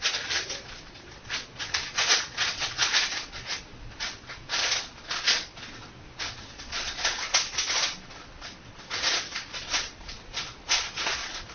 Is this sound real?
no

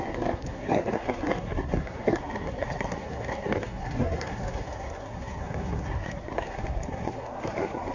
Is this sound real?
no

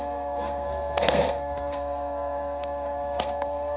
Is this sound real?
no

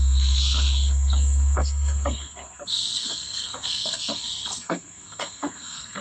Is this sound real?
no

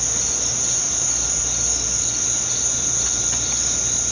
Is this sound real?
yes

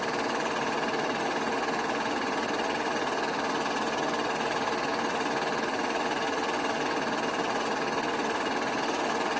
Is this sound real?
yes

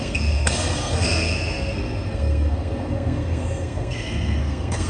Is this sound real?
no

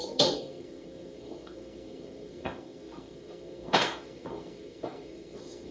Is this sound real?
no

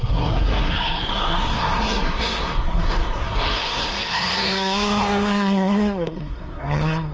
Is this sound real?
no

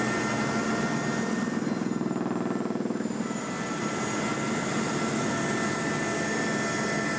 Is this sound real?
yes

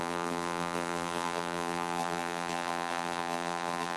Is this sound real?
no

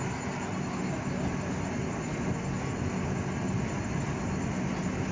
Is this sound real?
yes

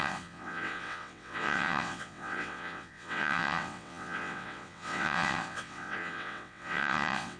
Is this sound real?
no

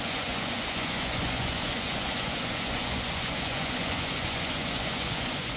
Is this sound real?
no